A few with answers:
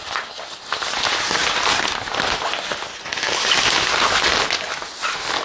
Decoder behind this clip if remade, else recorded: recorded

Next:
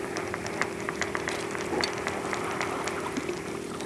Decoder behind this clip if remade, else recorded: recorded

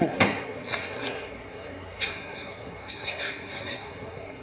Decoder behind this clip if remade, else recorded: remade, codec, SNAC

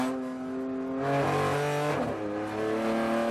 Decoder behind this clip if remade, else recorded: recorded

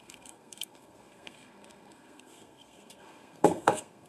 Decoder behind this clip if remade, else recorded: remade, codec, SNAC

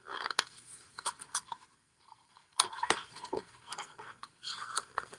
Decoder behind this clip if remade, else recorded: remade, codec, SNAC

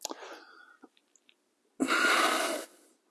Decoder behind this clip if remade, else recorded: recorded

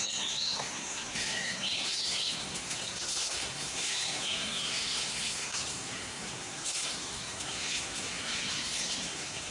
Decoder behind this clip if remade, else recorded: remade, codec, SNAC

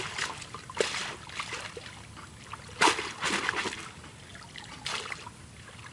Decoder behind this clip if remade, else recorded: recorded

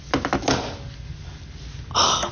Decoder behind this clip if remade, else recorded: recorded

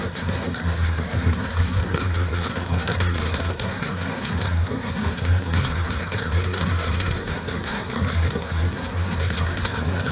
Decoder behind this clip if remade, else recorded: remade, codec, SNAC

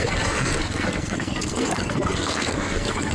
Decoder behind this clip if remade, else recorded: remade, codec, SNAC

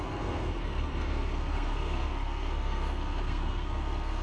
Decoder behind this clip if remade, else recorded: remade, codec, SNAC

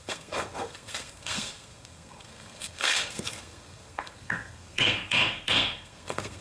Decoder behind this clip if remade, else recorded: remade, codec, SNAC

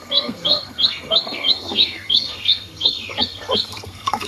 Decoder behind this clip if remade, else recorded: remade, codec, SNAC